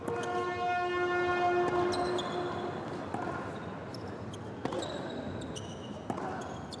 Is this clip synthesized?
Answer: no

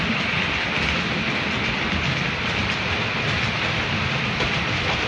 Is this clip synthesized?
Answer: no